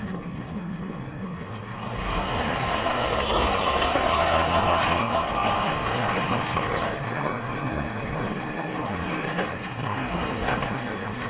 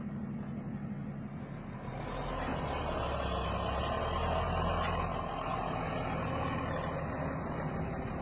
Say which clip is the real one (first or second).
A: second